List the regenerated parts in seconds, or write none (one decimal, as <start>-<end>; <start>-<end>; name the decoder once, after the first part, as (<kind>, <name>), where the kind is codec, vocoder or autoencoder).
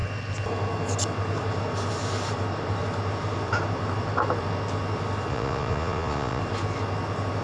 5.3-6.4 (vocoder, Vocos)